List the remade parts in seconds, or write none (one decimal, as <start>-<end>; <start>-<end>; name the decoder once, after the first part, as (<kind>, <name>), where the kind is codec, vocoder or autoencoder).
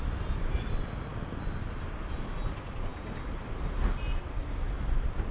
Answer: none